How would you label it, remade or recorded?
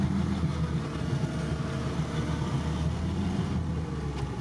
recorded